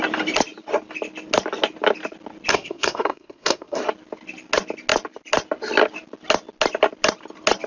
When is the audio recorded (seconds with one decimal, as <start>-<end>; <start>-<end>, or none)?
0.0-2.5; 3.8-7.7